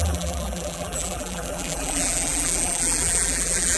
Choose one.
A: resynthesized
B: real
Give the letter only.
A